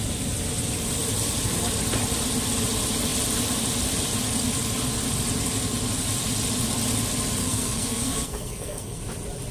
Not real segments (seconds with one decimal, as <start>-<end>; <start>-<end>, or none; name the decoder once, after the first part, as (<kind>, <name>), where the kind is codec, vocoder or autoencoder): 7.4-9.0 (codec, SNAC)